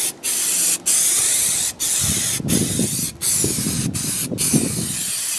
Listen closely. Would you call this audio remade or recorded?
recorded